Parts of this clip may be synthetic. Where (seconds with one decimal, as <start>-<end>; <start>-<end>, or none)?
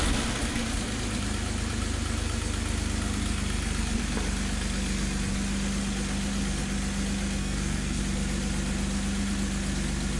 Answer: 7.4-8.0